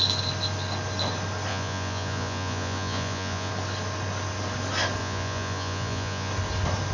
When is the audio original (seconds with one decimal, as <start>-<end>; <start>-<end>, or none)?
0.0-1.5; 3.5-5.0; 6.3-6.9